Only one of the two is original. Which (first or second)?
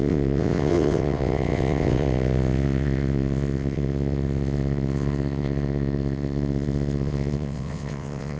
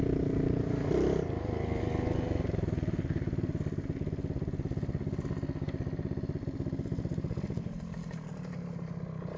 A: second